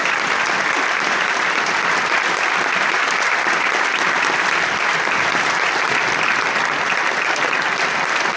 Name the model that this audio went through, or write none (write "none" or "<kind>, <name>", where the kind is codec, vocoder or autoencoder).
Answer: none